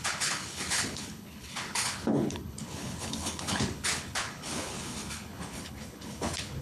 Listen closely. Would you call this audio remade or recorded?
remade